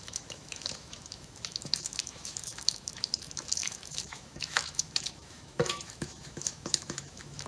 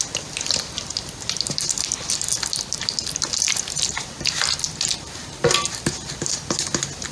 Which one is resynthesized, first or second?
first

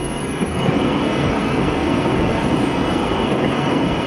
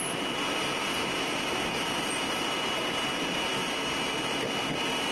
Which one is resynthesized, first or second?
first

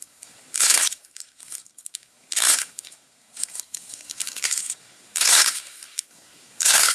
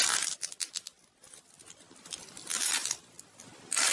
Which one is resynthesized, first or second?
first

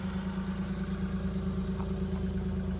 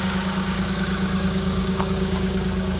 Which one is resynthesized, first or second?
second